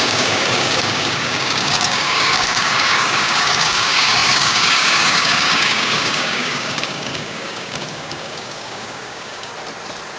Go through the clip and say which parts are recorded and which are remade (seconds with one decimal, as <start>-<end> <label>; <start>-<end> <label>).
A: 0.0-9.5 remade; 9.5-10.2 recorded